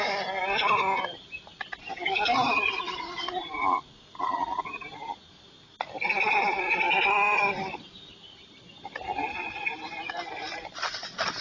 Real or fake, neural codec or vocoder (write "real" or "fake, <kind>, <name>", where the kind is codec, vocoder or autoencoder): real